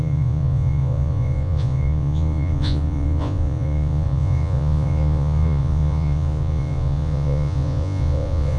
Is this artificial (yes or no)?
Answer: yes